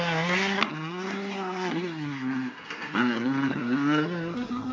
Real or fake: fake